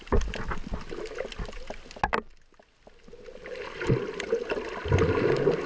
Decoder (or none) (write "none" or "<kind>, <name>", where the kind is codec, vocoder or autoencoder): none